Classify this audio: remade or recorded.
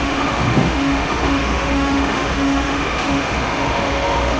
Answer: remade